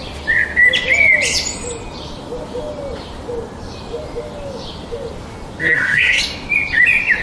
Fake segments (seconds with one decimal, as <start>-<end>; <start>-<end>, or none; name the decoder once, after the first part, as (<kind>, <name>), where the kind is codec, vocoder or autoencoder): 5.6-6.2 (codec, SNAC)